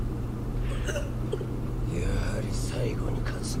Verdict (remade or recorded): remade